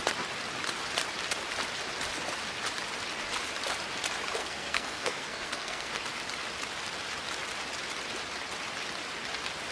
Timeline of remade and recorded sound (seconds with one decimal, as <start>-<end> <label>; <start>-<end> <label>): 0.0-4.4 recorded; 4.4-5.9 remade; 5.9-9.7 recorded